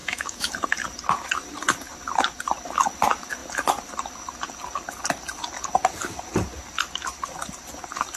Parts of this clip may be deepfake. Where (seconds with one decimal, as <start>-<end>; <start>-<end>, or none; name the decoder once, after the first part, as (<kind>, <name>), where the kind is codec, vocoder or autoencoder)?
0.0-0.5 (autoencoder, DAC-VAE)